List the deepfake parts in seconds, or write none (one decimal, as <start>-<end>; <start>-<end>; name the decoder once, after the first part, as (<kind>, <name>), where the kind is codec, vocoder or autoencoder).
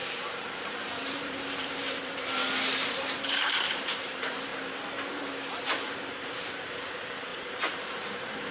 0.0-2.4 (vocoder, BigVGAN v2); 2.9-4.5; 5.6-8.5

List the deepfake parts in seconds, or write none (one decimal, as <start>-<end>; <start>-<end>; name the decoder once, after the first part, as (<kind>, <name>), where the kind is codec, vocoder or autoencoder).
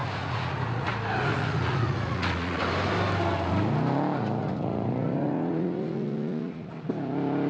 0.0-0.9 (vocoder, Vocos); 1.3-2.6; 4.4-6.9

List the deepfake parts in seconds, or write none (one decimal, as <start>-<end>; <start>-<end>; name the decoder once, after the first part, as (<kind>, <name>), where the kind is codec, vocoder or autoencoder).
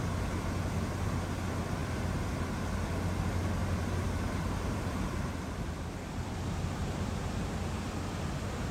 1.8-2.4 (vocoder, BigVGAN v2); 3.6-6.4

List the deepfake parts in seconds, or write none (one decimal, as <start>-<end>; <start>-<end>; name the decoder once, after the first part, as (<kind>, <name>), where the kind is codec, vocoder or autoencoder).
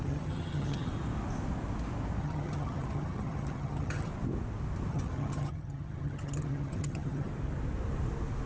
0.0-0.9 (vocoder, HiFi-GAN); 2.2-4.1; 4.9-7.3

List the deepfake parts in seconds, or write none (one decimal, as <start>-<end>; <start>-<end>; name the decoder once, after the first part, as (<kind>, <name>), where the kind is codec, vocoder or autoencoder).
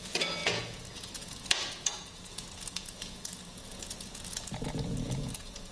0.0-5.7 (vocoder, Vocos)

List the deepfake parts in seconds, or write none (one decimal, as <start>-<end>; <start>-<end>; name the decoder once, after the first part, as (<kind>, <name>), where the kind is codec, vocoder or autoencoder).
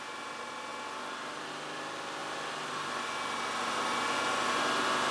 none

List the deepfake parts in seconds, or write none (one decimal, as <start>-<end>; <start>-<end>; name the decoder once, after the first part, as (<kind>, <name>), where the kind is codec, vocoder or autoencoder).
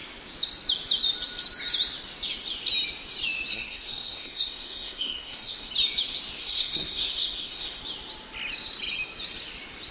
3.5-5.7 (codec, SNAC); 6.4-7.8